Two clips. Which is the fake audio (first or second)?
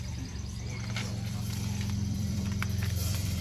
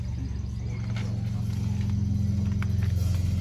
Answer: first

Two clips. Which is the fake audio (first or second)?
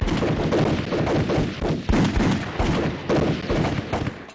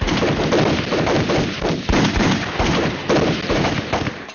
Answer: second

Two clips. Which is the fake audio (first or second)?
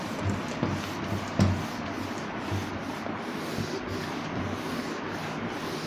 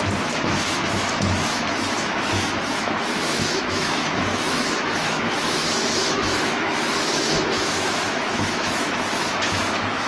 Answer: second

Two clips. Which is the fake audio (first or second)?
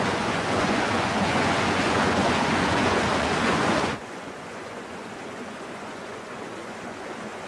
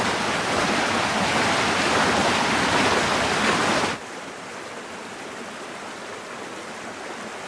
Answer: first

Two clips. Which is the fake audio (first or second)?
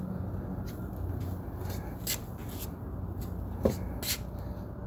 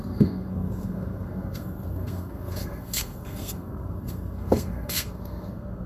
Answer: second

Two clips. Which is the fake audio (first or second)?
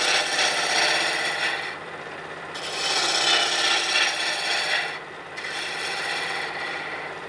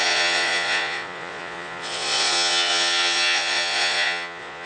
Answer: second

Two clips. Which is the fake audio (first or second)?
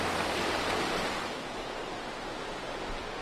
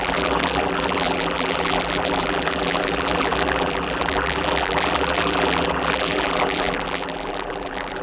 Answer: second